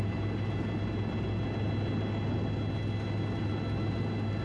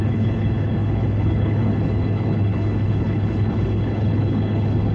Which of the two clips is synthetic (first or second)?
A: second